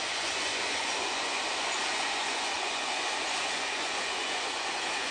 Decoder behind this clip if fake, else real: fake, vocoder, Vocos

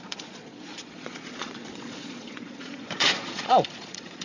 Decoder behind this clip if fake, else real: fake, vocoder, Vocos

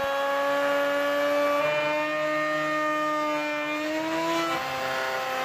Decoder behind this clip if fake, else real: real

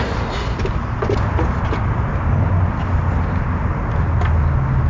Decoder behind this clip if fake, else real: real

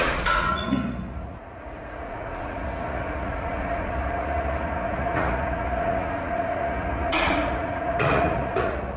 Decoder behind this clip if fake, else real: fake, vocoder, Vocos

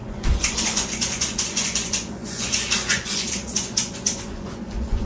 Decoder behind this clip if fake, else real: fake, vocoder, Vocos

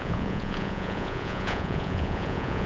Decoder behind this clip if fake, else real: fake, vocoder, Vocos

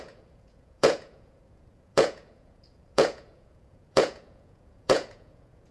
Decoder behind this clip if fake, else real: fake, vocoder, Vocos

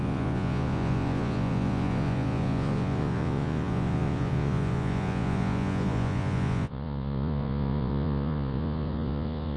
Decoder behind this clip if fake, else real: fake, vocoder, Vocos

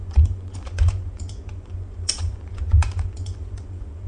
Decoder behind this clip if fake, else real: fake, vocoder, Vocos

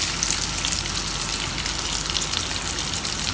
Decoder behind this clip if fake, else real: real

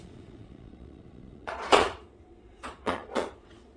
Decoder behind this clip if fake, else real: fake, vocoder, Vocos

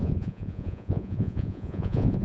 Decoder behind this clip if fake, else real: fake, vocoder, Vocos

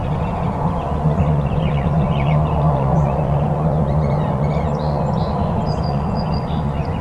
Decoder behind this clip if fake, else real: fake, vocoder, Vocos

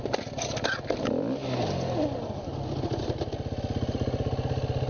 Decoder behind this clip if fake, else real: real